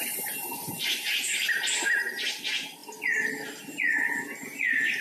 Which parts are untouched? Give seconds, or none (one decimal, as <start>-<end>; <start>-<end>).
0.0-0.6; 1.6-5.0